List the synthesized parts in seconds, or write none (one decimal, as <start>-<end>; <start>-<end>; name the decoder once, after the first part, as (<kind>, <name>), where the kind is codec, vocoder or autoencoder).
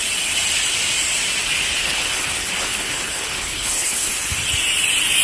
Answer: 1.8-4.1 (codec, HILCodec)